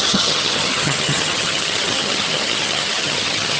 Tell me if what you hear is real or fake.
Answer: fake